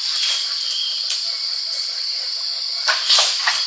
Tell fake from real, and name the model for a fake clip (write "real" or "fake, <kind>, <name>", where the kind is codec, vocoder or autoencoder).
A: real